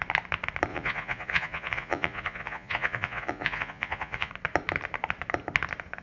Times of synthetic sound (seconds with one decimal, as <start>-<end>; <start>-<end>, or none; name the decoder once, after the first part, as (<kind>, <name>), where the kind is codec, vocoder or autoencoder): 0.7-4.3 (vocoder, Vocos)